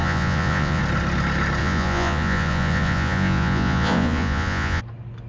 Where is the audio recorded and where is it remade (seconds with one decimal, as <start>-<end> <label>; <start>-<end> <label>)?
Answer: 0.0-0.8 remade; 0.8-1.6 recorded; 1.6-4.8 remade; 4.8-5.3 recorded